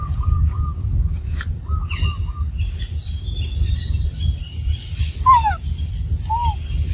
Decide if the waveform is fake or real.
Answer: real